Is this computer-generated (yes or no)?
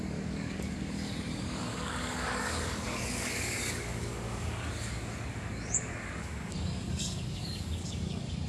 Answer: yes